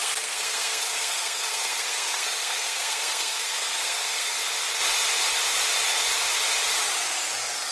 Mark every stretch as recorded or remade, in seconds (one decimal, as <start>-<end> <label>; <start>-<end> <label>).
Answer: 0.0-4.4 remade; 4.4-7.7 recorded